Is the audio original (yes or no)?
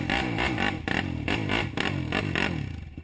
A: yes